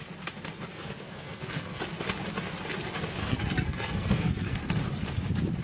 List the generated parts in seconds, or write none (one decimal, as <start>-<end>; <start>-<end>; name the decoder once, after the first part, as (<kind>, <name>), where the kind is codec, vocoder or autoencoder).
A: 0.7-1.8 (codec, SNAC); 3.2-4.7